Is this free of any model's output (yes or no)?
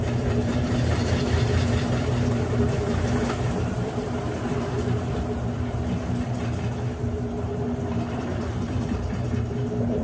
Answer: no